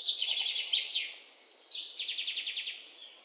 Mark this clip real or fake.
real